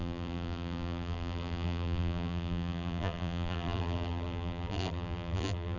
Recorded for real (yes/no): no